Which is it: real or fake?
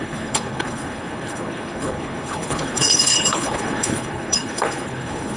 fake